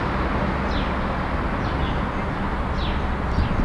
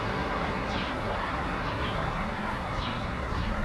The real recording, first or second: first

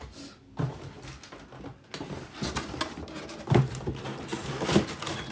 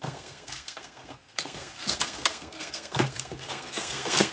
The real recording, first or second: first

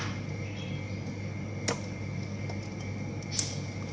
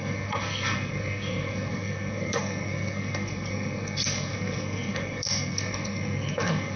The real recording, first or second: first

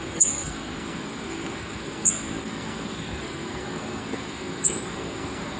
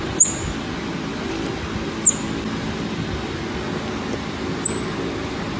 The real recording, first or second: second